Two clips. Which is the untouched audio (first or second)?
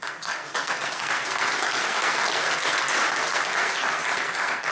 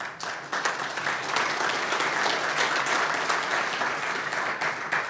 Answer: second